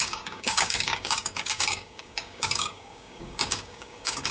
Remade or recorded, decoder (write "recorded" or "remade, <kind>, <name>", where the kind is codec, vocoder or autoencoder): remade, codec, DAC